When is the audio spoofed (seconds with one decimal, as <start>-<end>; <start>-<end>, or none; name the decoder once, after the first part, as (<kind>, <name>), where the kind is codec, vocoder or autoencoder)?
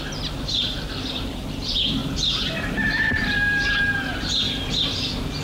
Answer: 2.0-3.8 (vocoder, BigVGAN v2)